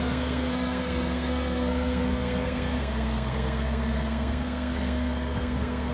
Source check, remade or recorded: remade